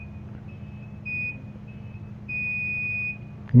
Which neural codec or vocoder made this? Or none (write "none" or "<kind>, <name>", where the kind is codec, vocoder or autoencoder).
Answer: none